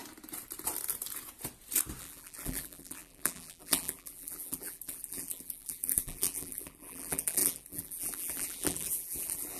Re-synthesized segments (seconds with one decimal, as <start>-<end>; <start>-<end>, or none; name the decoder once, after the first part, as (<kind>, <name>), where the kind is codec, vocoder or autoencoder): 2.0-9.6 (vocoder, BigVGAN v2)